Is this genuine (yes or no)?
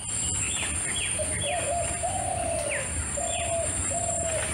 yes